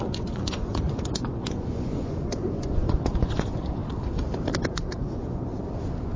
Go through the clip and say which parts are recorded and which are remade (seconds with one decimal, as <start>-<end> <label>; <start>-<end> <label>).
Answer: 0.0-3.8 remade; 3.8-4.6 recorded; 4.6-5.5 remade; 5.5-6.2 recorded